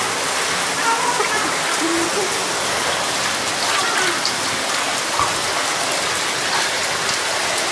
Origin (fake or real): real